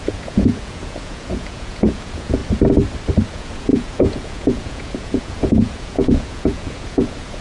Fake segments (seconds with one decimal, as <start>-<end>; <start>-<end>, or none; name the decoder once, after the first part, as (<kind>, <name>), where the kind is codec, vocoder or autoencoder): 0.0-2.4 (vocoder, Vocos); 3.3-7.4